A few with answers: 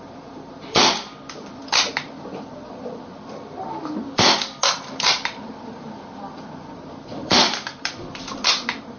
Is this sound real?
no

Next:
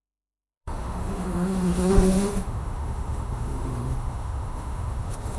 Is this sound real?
no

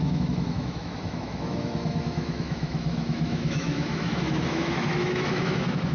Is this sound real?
no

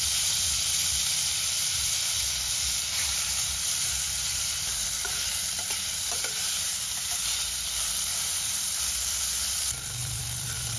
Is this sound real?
no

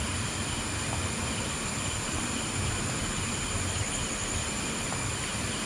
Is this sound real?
yes